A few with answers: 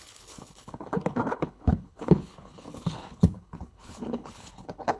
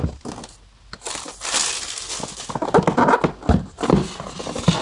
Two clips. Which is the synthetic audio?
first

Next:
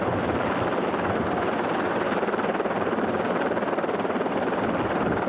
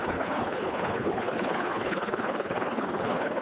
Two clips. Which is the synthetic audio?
second